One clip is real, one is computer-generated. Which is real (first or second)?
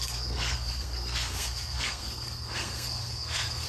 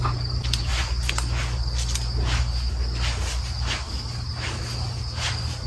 second